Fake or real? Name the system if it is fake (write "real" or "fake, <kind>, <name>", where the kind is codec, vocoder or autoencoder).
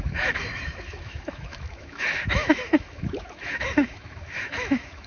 fake, autoencoder, DAC-VAE